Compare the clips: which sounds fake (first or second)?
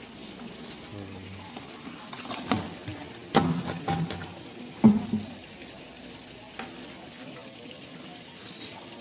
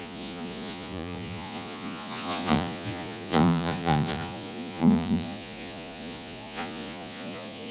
second